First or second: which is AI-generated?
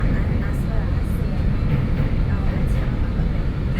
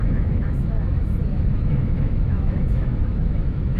second